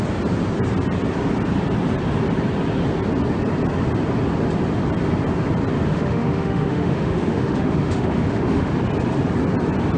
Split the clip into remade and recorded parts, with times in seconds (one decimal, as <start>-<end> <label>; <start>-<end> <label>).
0.0-5.9 recorded; 5.9-8.7 remade; 8.7-10.0 recorded